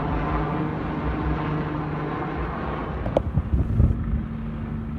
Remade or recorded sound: recorded